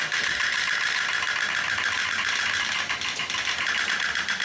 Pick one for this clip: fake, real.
real